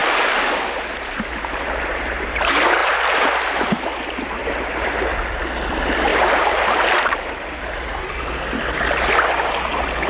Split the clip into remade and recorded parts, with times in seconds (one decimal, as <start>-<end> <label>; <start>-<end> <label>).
0.0-2.4 remade; 2.4-2.8 recorded; 2.8-3.7 remade; 3.7-4.4 recorded; 4.4-5.0 remade; 5.0-6.1 recorded; 6.1-8.0 remade; 8.0-10.1 recorded